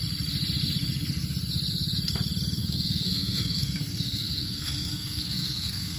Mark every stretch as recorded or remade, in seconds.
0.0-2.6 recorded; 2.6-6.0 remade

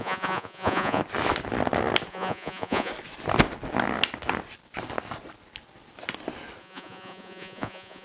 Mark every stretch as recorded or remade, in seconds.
0.0-1.0 remade; 1.0-2.1 recorded; 2.1-2.9 remade; 2.9-6.6 recorded; 6.6-8.0 remade